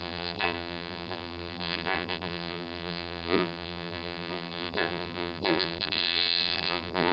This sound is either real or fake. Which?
fake